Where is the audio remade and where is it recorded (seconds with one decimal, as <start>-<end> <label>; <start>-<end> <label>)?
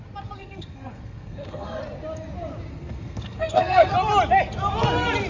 0.0-0.4 recorded; 0.4-1.8 remade; 1.8-2.7 recorded; 2.7-3.9 remade; 3.9-5.3 recorded